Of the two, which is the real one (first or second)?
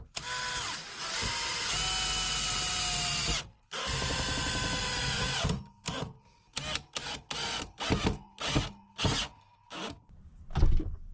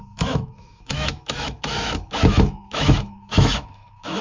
first